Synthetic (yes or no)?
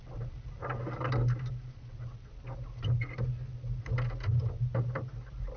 no